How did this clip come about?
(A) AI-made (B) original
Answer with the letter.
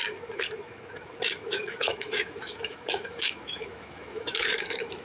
A